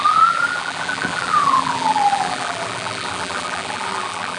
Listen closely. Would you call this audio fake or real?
fake